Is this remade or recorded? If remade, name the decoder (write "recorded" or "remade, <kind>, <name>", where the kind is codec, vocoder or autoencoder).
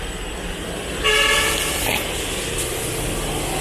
recorded